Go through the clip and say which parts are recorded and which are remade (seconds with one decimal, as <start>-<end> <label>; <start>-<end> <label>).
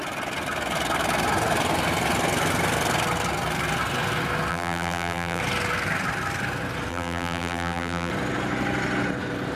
0.0-4.5 recorded; 4.5-5.4 remade; 5.4-6.9 recorded; 6.9-8.1 remade; 8.1-9.6 recorded